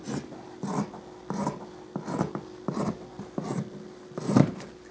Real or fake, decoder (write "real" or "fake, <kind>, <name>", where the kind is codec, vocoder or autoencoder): real